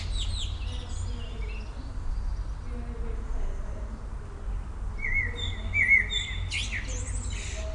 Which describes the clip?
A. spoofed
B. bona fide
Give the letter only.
B